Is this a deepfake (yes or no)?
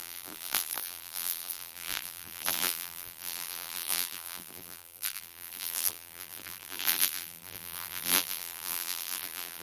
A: yes